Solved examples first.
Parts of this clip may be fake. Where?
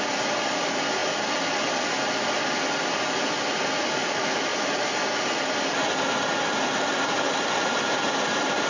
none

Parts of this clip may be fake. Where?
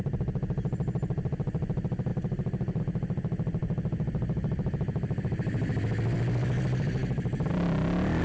none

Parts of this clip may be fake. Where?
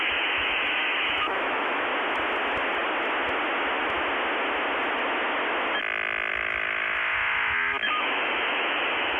0.0-1.9 (autoencoder, DAC-VAE); 6.3-9.2